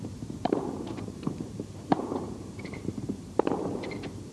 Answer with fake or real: fake